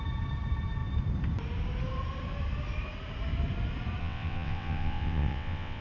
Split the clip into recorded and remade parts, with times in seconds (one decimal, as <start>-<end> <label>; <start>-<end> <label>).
0.0-4.0 recorded; 4.0-5.8 remade